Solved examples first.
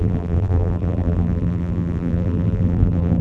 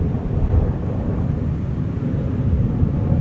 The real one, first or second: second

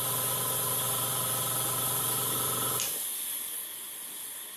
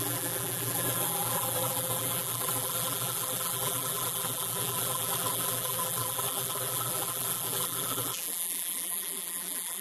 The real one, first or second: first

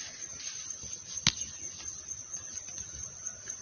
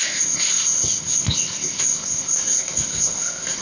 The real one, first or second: first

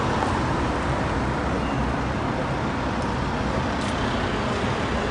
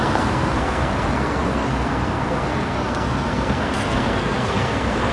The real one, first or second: first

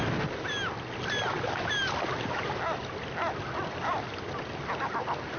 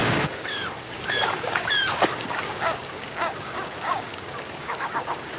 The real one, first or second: first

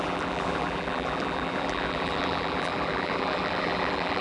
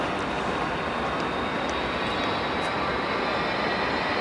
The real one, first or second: second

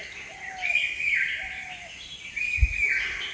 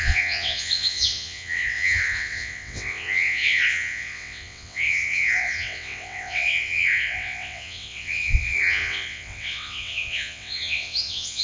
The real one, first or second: first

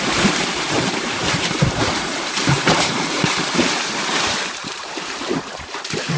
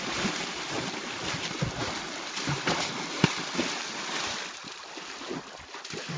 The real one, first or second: second